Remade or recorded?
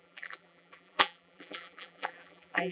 remade